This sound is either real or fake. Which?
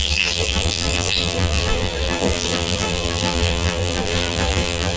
fake